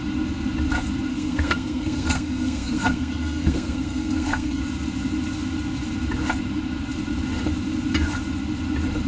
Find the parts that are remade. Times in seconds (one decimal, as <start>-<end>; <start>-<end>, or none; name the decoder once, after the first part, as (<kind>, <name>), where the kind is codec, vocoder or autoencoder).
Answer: 1.1-4.6 (codec, SNAC)